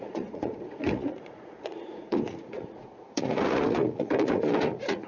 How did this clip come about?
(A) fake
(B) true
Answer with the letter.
A